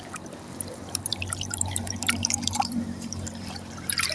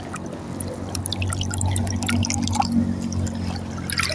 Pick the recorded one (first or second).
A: second